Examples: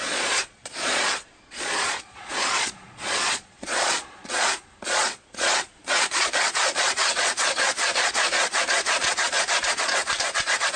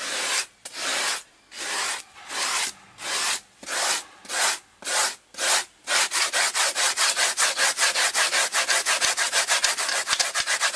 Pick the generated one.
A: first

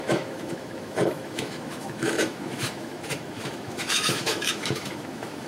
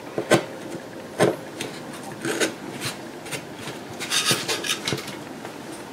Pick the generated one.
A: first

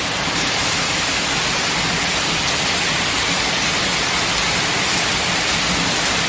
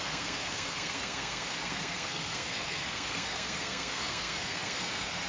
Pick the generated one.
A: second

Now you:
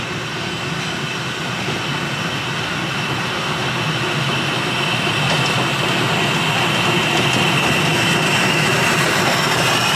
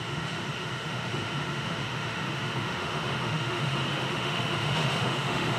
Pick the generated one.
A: second